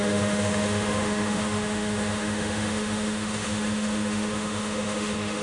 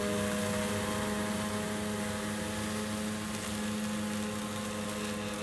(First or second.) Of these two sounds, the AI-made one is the first